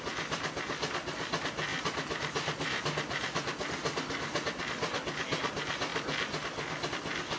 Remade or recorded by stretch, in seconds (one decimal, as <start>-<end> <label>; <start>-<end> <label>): 0.0-1.7 recorded; 1.7-4.6 remade; 4.6-7.4 recorded